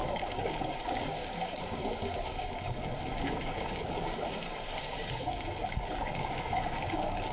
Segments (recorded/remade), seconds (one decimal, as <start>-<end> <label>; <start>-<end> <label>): 0.0-7.3 remade